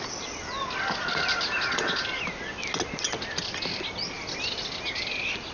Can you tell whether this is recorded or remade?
recorded